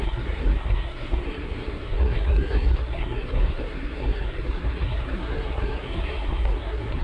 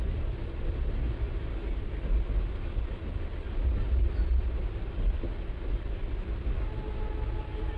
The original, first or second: second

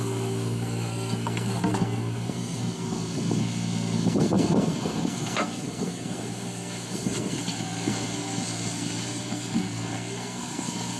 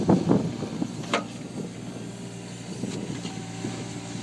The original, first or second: second